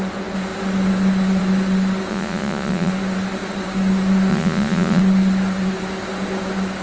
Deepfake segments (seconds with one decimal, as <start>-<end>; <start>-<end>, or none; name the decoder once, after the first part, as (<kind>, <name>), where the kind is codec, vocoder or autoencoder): 2.1-2.9 (vocoder, Vocos); 4.3-5.0